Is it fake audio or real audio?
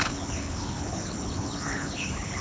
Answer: fake